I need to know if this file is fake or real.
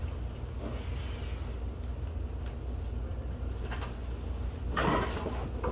real